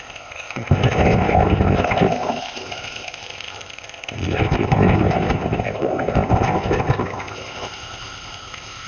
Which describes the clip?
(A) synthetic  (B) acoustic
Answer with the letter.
A